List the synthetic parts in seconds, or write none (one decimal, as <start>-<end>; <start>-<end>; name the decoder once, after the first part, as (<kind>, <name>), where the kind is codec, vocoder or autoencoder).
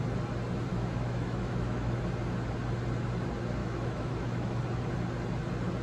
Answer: 0.7-2.0 (autoencoder, DAC-VAE); 3.6-4.6